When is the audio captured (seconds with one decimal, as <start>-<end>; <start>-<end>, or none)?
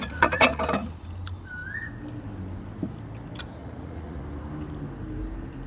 0.6-3.6; 4.2-5.7